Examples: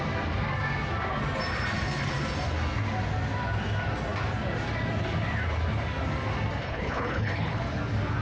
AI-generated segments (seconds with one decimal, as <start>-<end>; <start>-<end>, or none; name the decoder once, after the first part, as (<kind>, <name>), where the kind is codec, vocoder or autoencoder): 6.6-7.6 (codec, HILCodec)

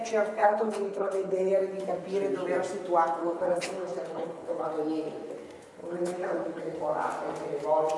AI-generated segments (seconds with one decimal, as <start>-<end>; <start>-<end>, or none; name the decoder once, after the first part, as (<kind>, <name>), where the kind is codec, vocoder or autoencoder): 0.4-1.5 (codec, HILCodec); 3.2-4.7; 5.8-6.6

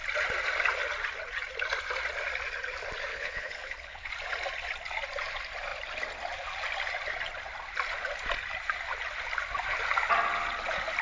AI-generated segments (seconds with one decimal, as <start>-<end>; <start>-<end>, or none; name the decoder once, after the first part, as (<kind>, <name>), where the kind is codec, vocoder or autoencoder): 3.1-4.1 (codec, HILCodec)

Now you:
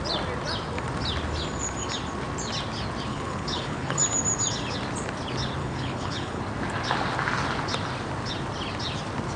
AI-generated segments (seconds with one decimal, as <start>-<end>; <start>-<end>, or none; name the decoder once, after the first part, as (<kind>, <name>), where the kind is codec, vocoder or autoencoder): 3.1-4.0 (codec, HILCodec); 5.6-6.4